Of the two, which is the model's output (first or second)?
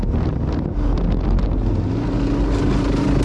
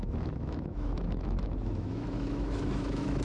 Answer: second